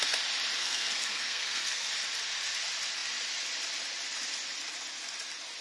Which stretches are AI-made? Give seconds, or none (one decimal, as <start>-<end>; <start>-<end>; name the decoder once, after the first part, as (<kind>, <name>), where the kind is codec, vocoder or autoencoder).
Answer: 0.6-1.9 (codec, SNAC)